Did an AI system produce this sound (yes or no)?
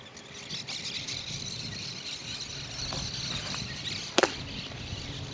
no